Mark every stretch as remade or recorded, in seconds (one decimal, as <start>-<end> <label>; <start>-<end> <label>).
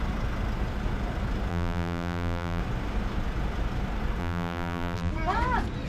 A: 0.0-1.5 recorded; 1.5-2.6 remade; 2.6-4.2 recorded; 4.2-5.1 remade; 5.1-5.9 recorded